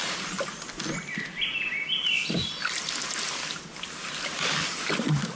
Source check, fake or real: real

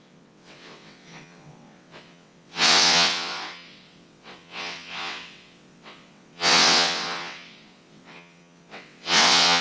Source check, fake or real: fake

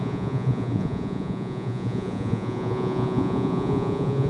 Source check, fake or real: fake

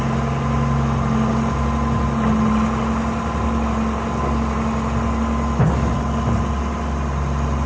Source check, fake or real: real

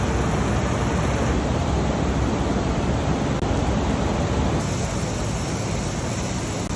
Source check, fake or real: real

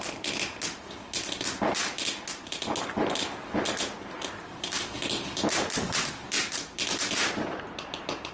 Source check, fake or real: real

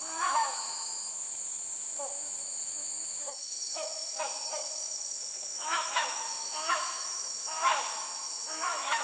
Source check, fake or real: fake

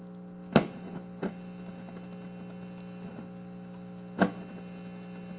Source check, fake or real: real